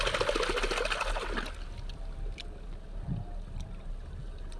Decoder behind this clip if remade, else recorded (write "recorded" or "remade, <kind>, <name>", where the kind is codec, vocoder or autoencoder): recorded